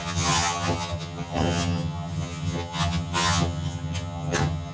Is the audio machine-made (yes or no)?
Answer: yes